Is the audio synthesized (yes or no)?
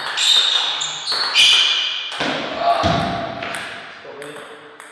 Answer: no